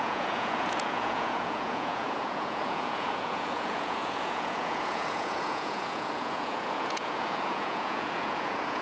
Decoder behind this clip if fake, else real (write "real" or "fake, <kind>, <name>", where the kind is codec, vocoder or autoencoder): fake, vocoder, Vocos